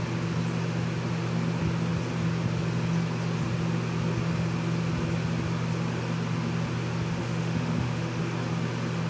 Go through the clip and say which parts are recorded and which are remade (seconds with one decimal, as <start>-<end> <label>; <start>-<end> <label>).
0.0-7.2 recorded; 7.2-8.2 remade; 8.2-9.1 recorded